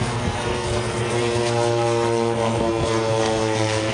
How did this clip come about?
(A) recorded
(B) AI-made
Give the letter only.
B